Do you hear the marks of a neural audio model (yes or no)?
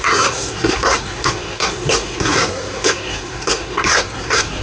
yes